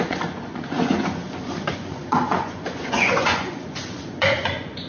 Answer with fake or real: fake